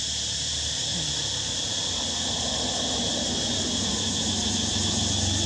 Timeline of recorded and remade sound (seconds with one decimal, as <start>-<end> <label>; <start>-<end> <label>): 0.0-5.5 recorded